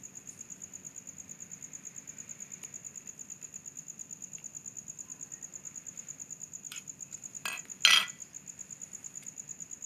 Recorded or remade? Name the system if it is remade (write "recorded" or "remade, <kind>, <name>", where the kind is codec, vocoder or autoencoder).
recorded